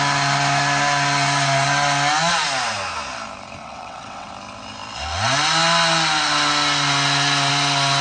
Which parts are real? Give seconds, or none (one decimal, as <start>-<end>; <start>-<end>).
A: 0.0-3.6; 4.3-8.0